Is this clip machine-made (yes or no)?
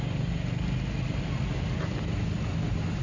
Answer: no